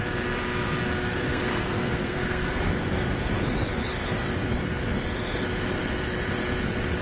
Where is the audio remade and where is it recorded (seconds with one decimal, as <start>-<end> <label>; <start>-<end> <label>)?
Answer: 0.0-1.3 recorded; 1.3-2.7 remade; 2.7-7.0 recorded